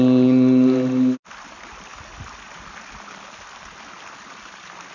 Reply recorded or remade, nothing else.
recorded